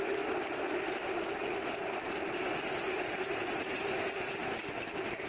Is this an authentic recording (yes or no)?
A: yes